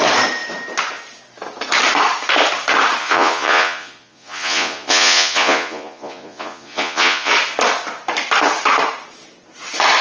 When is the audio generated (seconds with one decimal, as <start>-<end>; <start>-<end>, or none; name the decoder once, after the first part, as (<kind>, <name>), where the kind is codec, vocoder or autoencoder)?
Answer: 3.0-7.3 (vocoder, Vocos)